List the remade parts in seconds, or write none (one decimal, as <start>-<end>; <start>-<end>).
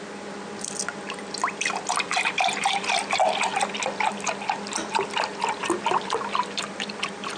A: none